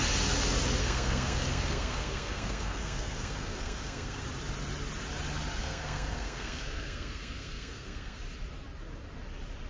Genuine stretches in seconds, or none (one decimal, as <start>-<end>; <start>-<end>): 0.0-0.8; 4.2-5.6; 8.2-9.7